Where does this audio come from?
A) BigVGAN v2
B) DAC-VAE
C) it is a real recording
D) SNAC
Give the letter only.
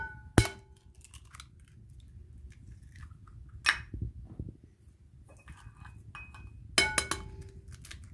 C